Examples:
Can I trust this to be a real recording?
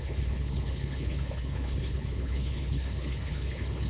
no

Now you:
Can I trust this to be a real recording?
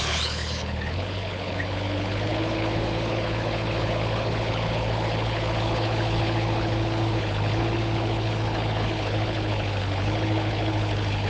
no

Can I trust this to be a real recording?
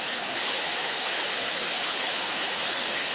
no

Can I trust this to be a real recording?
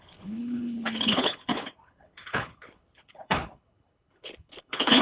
no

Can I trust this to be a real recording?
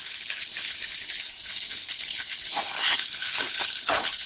no